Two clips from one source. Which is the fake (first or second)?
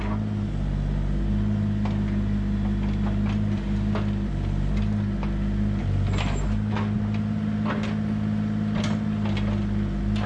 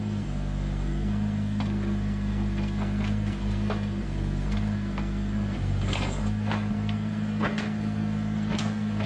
second